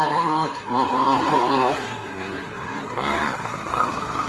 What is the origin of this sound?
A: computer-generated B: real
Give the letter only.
A